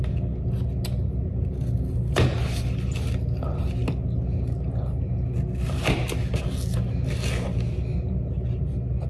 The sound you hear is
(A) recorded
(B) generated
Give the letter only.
A